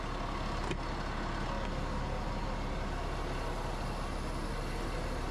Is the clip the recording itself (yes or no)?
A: yes